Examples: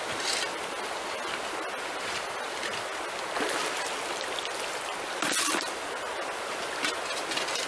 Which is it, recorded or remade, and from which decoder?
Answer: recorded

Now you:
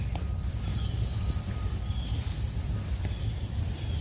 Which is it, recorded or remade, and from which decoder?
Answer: recorded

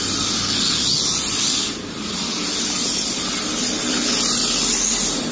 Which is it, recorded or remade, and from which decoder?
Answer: recorded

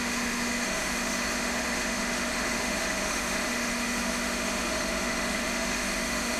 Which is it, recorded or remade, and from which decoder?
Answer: remade, autoencoder, DAC-VAE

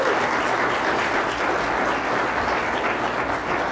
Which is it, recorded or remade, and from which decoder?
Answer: recorded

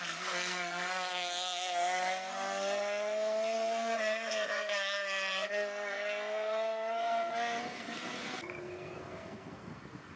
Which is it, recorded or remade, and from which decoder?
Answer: remade, codec, SNAC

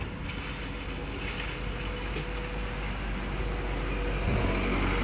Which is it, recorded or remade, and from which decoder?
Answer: recorded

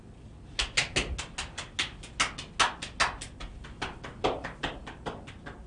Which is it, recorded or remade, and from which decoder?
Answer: recorded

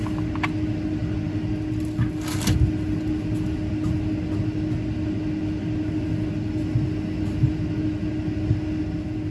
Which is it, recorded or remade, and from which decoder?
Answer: recorded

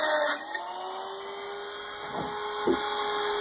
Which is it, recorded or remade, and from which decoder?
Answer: recorded